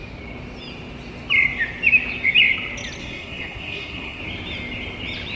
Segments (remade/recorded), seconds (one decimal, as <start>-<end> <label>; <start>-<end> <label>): 0.0-3.0 recorded; 3.0-4.2 remade; 4.2-5.4 recorded